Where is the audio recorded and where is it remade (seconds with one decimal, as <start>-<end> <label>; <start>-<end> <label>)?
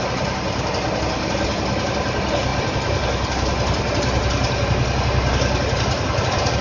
0.0-6.6 recorded